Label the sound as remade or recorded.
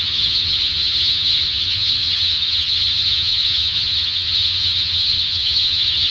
remade